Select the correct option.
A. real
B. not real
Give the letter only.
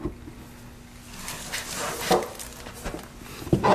A